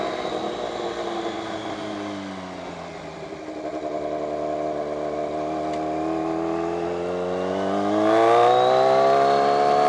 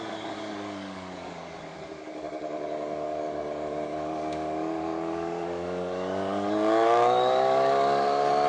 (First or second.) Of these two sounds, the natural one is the first